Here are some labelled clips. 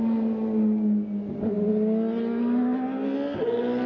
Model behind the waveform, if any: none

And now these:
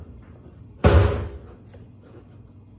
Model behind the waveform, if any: none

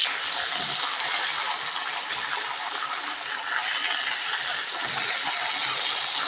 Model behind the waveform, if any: none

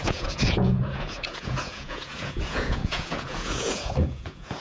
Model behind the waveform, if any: vocoder, Vocos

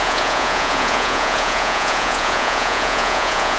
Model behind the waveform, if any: vocoder, Vocos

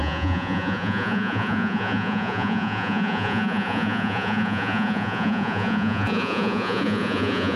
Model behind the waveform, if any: vocoder, Vocos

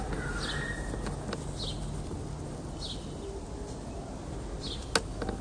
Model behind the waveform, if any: none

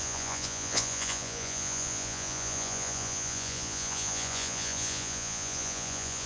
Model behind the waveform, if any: vocoder, Vocos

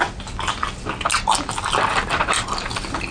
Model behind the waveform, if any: none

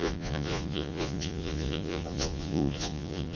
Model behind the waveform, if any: vocoder, Vocos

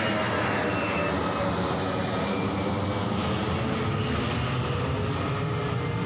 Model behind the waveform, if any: none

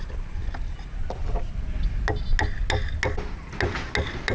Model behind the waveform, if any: none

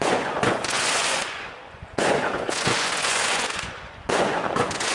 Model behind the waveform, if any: vocoder, Vocos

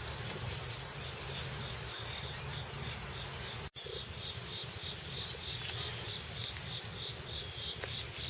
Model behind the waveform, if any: none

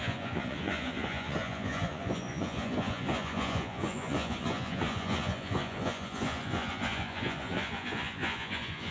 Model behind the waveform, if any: vocoder, Vocos